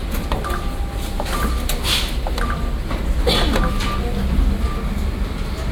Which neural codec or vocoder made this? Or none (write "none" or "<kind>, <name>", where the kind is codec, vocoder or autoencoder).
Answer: none